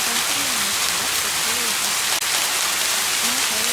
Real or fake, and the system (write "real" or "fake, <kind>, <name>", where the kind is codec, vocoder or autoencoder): real